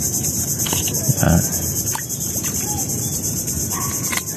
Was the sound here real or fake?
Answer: real